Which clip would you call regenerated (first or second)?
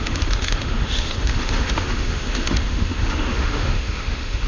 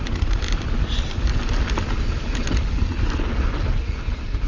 first